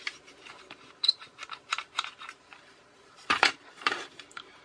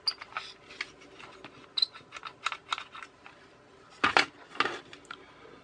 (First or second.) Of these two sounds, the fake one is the first